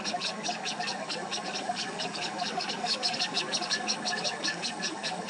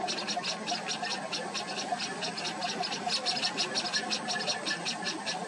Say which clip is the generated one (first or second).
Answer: first